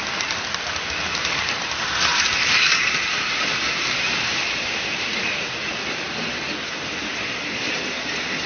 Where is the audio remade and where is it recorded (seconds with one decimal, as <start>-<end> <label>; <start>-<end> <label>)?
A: 0.0-1.1 recorded; 1.1-5.5 remade; 5.5-6.7 recorded; 6.7-8.1 remade; 8.1-8.5 recorded